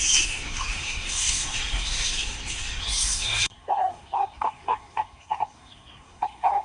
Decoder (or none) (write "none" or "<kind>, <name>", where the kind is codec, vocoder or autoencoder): codec, SNAC